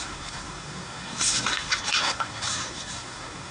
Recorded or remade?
remade